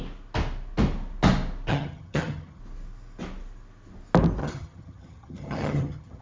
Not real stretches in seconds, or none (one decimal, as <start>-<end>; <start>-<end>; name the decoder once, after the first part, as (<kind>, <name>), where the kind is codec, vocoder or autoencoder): 1.7-2.6 (vocoder, HiFi-GAN); 4.4-6.2